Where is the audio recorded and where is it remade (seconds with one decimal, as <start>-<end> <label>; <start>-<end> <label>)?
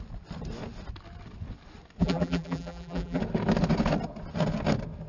0.0-2.0 recorded; 2.0-3.2 remade; 3.2-5.1 recorded